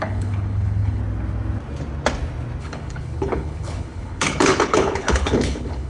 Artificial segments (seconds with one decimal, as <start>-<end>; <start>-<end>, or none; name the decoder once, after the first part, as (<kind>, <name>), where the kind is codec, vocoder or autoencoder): 0.0-1.0 (codec, HILCodec); 2.6-5.9